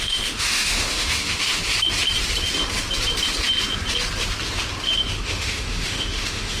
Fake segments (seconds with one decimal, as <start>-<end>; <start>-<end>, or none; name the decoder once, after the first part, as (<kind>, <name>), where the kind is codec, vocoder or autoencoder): 0.0-1.6 (autoencoder, DAC-VAE); 5.1-6.6